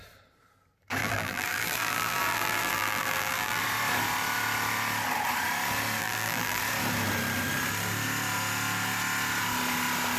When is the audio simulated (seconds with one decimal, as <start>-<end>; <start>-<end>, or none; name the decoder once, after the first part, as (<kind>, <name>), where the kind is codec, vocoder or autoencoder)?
1.0-3.6 (vocoder, BigVGAN v2); 6.0-6.6